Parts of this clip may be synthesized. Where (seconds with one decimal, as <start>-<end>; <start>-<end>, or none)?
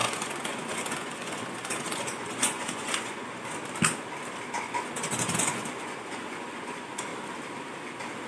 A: 0.0-3.6; 4.6-7.1